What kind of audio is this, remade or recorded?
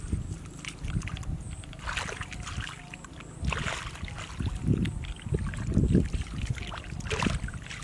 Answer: recorded